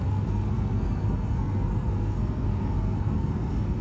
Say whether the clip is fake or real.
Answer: fake